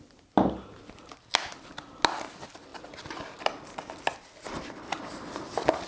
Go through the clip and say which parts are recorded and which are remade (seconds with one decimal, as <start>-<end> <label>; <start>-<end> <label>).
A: 0.0-5.9 recorded